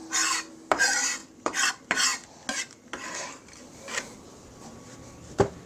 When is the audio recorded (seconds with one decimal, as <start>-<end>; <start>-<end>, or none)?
0.0-1.2; 1.7-5.7